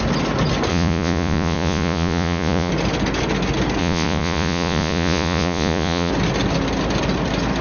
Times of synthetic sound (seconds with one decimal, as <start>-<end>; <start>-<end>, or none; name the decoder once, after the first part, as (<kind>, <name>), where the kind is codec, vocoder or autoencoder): 0.7-2.7 (vocoder, Vocos); 3.8-6.1